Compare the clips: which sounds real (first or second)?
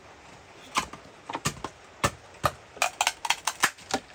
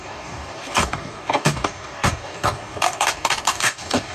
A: first